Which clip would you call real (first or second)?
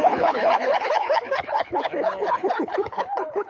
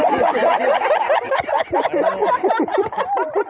second